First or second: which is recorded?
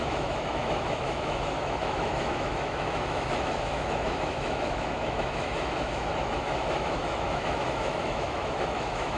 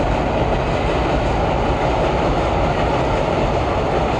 second